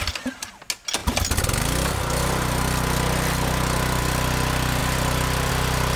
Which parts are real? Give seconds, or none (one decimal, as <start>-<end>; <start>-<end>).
0.0-6.0